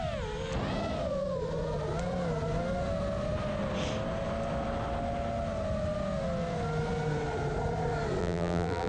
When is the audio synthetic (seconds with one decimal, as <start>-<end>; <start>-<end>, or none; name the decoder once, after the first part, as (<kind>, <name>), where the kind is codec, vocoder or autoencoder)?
8.2-8.9 (vocoder, BigVGAN v2)